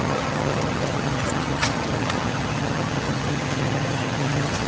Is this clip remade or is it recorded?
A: remade